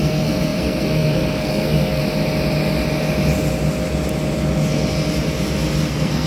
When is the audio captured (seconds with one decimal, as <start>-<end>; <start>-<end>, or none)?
2.0-5.8